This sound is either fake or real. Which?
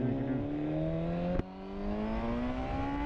real